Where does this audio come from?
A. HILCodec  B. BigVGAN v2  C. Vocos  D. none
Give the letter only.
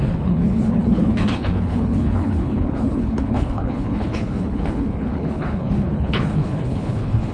A